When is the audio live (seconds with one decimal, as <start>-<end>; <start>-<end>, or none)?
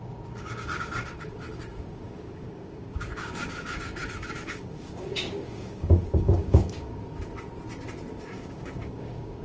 6.9-8.2